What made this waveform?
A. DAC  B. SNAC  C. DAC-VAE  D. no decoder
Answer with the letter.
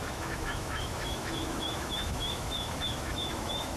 C